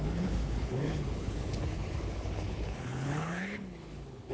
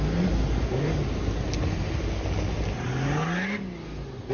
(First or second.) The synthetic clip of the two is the first